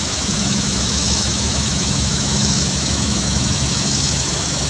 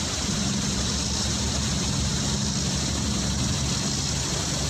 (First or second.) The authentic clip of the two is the second